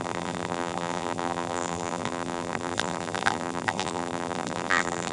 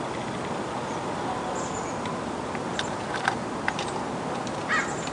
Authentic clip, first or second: second